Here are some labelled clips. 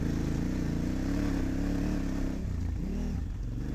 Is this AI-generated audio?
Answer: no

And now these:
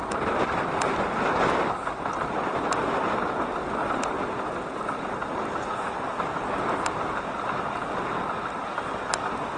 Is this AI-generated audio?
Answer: no